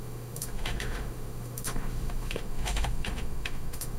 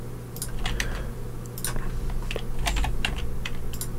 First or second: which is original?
second